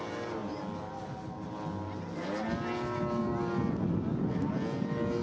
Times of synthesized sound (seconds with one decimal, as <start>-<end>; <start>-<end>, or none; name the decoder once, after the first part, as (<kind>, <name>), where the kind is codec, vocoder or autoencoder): none